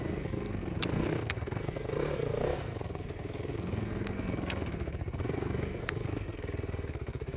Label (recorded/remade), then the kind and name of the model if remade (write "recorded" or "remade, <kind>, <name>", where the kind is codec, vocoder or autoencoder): remade, codec, SNAC